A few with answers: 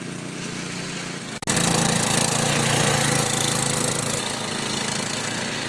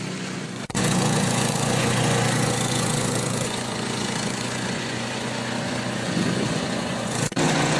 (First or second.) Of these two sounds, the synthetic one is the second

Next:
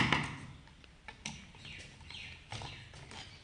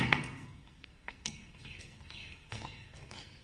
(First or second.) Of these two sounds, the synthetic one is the second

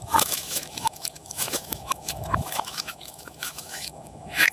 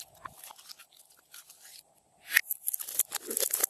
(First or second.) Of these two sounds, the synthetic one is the first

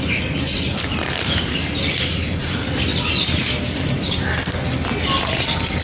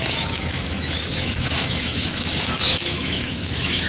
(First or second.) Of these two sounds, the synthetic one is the second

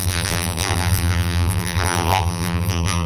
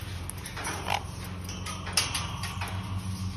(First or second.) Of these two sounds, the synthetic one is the first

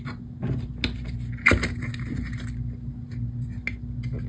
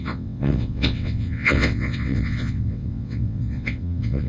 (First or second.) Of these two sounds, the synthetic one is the second